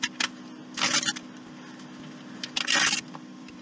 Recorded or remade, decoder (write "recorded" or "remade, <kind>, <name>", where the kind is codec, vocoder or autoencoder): recorded